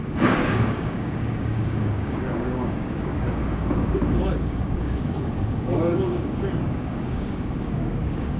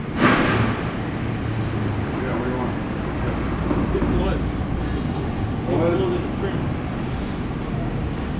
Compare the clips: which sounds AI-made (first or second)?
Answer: first